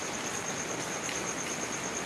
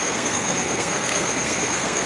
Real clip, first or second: first